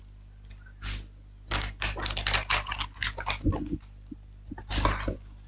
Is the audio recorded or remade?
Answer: recorded